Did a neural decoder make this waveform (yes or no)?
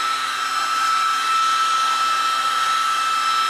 no